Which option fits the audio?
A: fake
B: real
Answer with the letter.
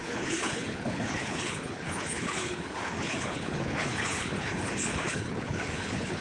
A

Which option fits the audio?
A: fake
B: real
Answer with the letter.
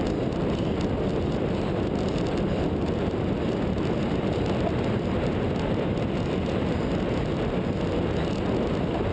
B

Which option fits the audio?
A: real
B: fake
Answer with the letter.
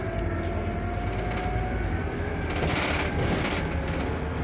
A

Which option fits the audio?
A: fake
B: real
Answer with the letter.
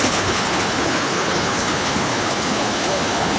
A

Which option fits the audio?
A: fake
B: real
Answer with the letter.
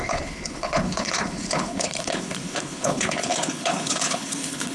A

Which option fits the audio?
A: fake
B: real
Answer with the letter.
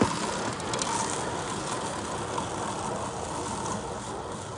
B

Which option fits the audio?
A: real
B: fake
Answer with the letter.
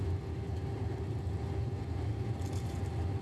A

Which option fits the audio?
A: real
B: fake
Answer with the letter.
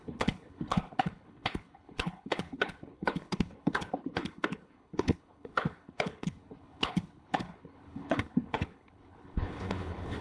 B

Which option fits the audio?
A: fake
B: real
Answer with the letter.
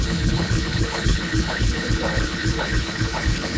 A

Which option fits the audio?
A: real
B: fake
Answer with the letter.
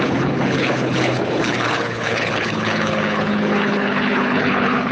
B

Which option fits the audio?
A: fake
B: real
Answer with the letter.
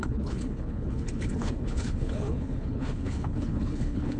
A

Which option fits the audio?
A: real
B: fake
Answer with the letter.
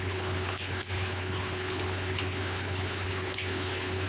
B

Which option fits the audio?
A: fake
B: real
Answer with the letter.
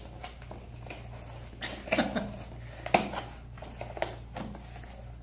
B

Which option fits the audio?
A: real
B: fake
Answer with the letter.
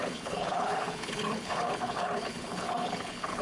B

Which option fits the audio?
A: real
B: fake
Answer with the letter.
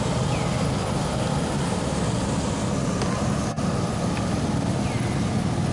A